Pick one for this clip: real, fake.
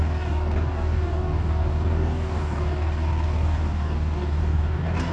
fake